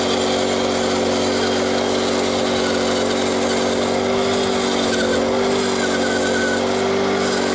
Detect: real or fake real